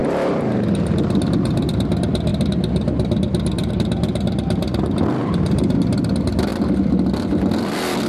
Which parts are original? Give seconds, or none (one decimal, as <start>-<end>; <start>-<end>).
0.0-5.2; 5.9-8.1